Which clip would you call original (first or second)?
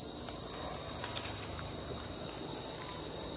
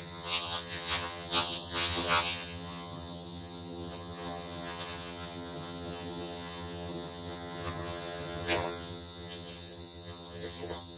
first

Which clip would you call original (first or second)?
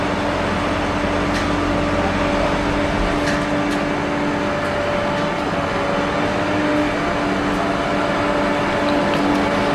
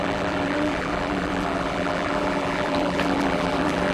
first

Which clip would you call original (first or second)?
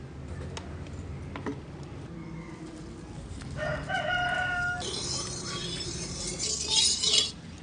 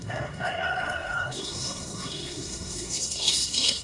first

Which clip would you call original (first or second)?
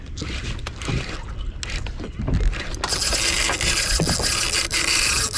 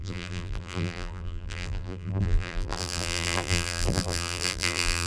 first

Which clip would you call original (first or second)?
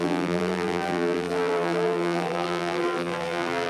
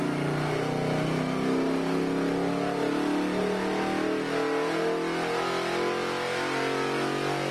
second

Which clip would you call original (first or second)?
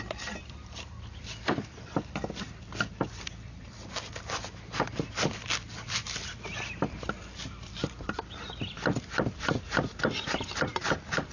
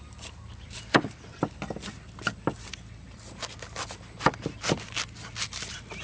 second